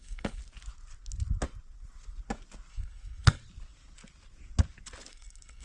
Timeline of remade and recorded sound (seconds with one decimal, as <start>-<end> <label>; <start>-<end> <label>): 0.0-0.4 remade; 0.4-2.7 recorded; 2.7-3.4 remade; 3.4-5.1 recorded; 5.1-5.6 remade